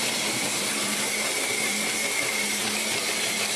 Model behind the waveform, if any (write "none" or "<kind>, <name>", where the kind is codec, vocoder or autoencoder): vocoder, BigVGAN v2